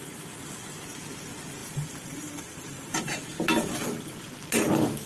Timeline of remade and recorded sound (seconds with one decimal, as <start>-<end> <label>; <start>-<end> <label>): 0.0-1.6 recorded; 1.6-3.1 remade; 3.1-3.7 recorded; 3.7-4.3 remade; 4.3-5.1 recorded

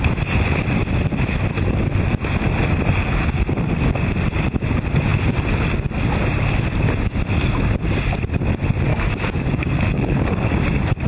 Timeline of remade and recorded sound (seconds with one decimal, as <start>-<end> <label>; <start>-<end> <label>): 0.0-8.9 recorded; 8.9-10.6 remade; 10.6-11.1 recorded

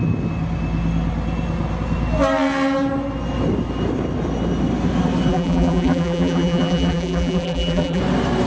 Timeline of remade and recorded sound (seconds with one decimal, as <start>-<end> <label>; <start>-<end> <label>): 0.0-5.3 recorded; 5.3-8.0 remade; 8.0-8.5 recorded

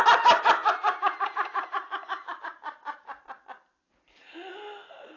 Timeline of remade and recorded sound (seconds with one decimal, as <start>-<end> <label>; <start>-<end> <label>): 0.0-0.6 recorded; 0.6-3.4 remade; 3.4-5.2 recorded

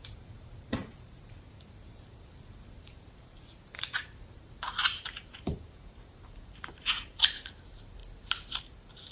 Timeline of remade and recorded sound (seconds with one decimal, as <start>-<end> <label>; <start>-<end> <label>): 0.0-8.0 remade; 8.0-8.6 recorded; 8.6-9.1 remade

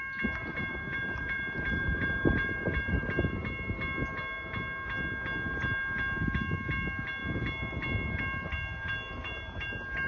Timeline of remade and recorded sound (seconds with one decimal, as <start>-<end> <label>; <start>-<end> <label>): 0.0-0.4 recorded; 0.4-3.4 remade; 3.4-10.1 recorded

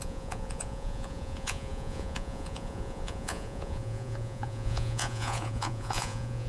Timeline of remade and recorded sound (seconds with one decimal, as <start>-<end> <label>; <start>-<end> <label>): 0.0-6.5 remade

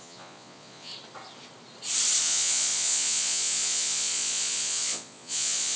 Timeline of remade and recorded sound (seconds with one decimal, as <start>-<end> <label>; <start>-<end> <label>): 0.0-0.9 remade; 0.9-2.2 recorded; 2.2-5.8 remade